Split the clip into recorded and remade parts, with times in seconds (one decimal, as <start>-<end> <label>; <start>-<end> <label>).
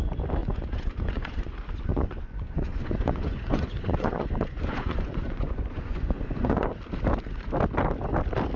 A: 0.0-0.4 recorded; 0.4-1.5 remade; 1.5-1.9 recorded; 1.9-6.7 remade; 6.7-8.6 recorded